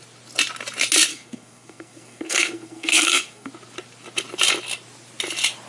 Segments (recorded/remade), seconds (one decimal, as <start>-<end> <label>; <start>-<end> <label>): 0.0-1.1 recorded; 1.1-3.5 remade; 3.5-5.7 recorded